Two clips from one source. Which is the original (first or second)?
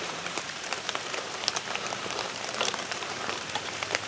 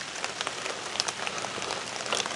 second